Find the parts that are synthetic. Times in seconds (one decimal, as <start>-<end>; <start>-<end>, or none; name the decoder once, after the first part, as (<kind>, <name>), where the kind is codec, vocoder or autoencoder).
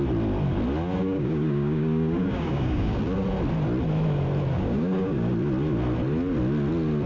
1.0-3.0 (codec, DAC); 4.5-5.3